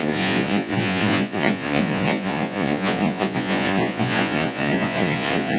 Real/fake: fake